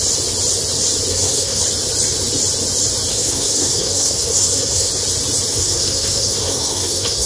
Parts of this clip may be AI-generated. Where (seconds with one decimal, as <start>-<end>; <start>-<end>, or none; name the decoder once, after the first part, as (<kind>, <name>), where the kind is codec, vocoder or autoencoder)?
1.1-1.6 (codec, SNAC); 3.1-4.9; 5.5-7.3